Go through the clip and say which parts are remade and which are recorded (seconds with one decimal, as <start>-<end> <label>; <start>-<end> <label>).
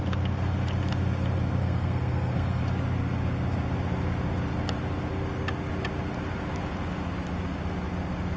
0.0-1.6 recorded; 1.6-2.6 remade; 2.6-8.4 recorded